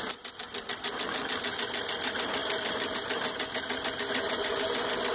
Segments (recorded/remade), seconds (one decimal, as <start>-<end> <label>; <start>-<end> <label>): 0.0-5.1 recorded